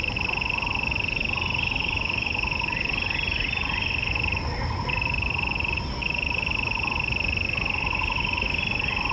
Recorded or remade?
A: recorded